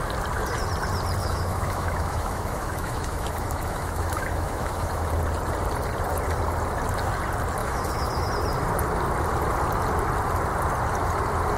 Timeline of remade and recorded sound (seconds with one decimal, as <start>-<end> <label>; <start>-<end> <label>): 0.0-1.2 recorded; 1.2-5.1 remade; 5.1-7.6 recorded; 7.6-8.3 remade; 8.3-11.6 recorded